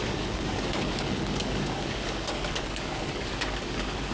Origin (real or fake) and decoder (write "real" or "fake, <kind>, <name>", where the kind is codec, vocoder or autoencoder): fake, codec, DAC